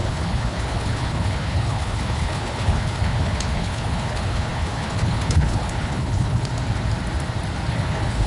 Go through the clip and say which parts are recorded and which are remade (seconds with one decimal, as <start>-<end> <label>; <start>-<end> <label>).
0.0-6.5 remade; 6.5-7.7 recorded; 7.7-8.3 remade